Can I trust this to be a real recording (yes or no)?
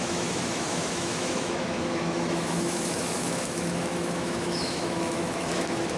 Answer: no